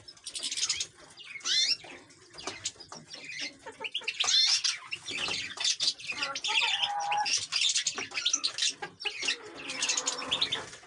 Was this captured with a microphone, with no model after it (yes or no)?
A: yes